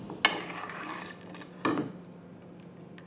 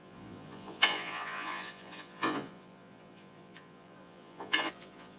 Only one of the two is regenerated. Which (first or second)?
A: second